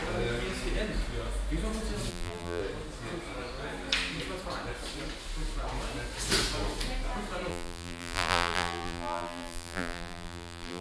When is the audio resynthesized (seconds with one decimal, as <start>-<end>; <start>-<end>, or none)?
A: 2.1-2.6; 7.5-10.8

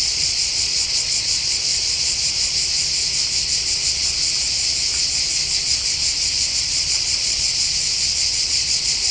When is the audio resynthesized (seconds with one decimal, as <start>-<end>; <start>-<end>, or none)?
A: 0.0-1.7; 6.6-7.5; 8.4-9.1

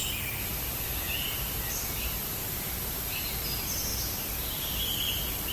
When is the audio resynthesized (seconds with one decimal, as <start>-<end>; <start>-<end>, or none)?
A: none

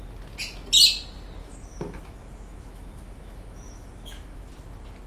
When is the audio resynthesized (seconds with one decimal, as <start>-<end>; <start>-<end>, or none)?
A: 1.4-4.5

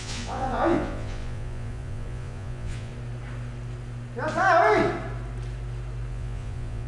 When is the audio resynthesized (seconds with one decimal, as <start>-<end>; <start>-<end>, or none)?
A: 0.0-2.9; 6.1-6.9

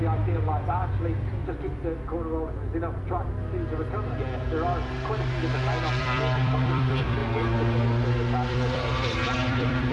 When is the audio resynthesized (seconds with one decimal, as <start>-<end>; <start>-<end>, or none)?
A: 0.0-1.4; 6.0-7.2; 8.5-9.9